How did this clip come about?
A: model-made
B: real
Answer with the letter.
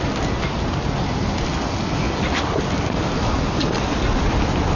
B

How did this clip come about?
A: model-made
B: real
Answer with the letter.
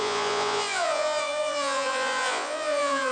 A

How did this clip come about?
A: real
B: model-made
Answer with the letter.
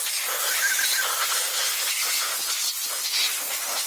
A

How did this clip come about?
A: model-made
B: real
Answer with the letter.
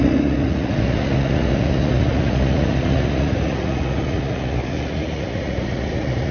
A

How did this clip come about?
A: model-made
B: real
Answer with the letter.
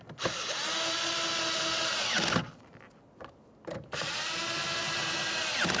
B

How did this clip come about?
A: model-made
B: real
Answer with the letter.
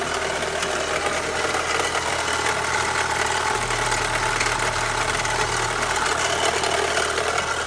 B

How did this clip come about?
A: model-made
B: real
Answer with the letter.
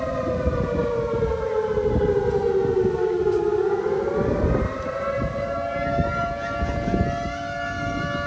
B